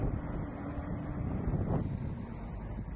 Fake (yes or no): no